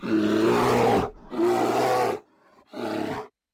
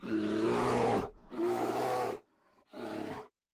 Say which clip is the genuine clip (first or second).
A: first